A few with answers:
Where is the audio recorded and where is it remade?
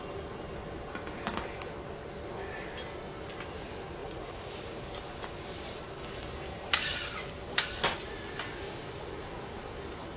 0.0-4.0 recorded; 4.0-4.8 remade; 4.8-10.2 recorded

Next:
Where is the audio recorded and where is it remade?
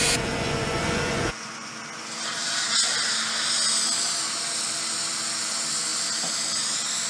0.0-1.7 remade; 1.7-7.1 recorded